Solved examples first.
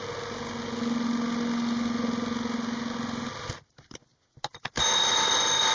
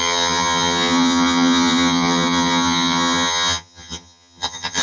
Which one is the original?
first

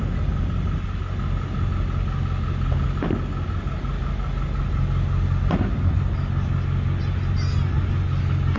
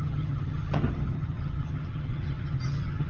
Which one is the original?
first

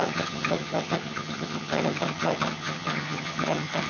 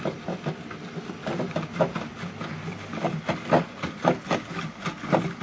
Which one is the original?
second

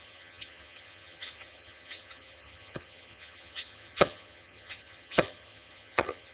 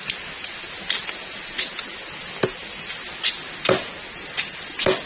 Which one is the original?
second